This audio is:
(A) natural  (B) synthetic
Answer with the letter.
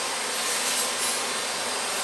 A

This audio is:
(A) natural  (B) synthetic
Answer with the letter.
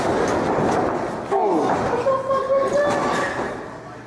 A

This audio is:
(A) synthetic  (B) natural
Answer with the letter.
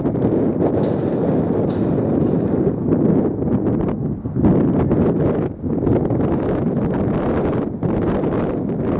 B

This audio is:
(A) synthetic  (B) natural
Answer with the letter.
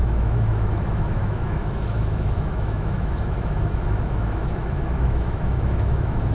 A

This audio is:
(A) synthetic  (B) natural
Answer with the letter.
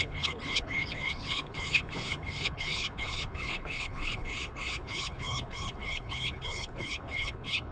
A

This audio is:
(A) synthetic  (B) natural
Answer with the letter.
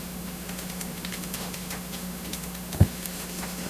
A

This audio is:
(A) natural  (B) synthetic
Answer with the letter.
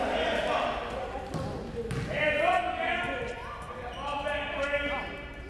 A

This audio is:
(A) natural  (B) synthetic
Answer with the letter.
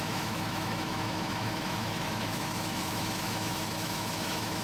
B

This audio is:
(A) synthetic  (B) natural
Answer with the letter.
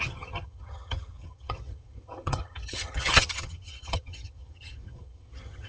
A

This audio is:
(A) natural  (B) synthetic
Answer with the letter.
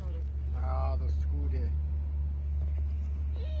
A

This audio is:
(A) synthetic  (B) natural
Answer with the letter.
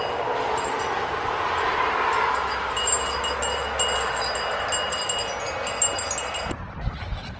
B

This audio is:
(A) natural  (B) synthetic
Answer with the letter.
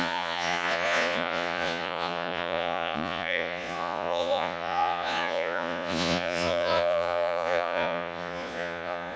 B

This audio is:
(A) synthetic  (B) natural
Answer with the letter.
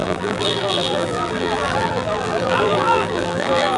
A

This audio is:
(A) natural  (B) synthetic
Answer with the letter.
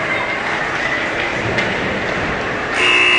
A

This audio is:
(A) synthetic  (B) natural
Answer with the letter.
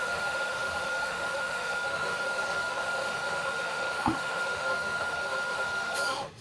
A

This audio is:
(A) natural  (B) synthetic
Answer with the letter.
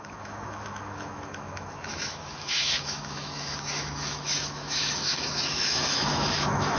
B